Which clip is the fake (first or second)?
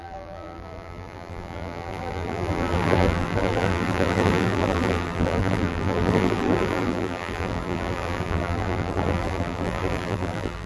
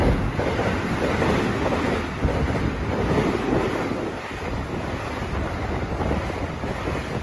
first